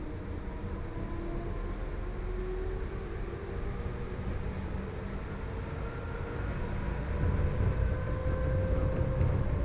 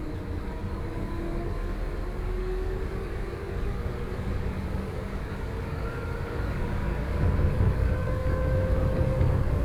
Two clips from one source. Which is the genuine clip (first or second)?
first